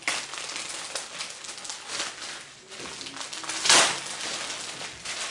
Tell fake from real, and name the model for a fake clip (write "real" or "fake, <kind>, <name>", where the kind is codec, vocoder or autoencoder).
real